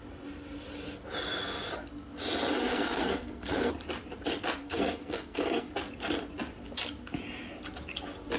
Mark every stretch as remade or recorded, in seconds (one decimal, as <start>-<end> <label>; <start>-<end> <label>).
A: 0.0-2.7 recorded; 2.7-3.7 remade; 3.7-4.6 recorded; 4.6-5.7 remade; 5.7-8.4 recorded